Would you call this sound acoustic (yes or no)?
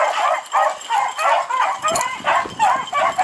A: yes